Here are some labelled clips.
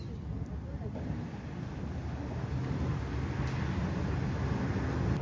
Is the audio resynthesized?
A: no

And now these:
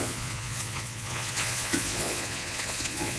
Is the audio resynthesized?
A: yes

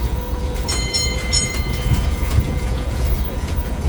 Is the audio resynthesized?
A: yes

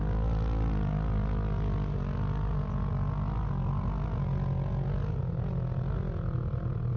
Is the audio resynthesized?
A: no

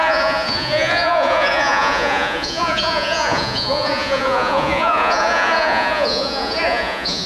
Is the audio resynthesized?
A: yes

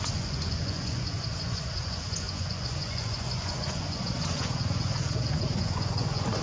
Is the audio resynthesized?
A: yes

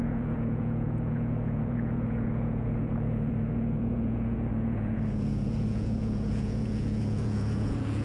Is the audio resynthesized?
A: yes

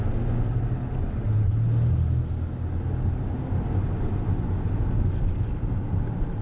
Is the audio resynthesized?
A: no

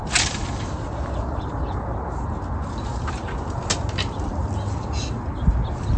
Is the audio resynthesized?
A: no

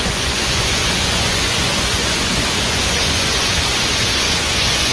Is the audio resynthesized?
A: yes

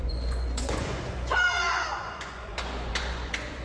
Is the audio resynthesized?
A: yes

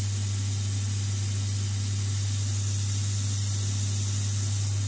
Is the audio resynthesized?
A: no